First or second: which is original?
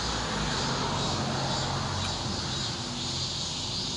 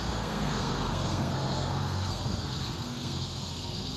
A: first